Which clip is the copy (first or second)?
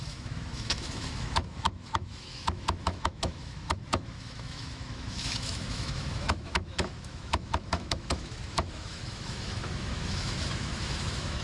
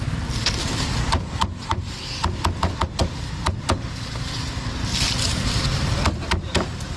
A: first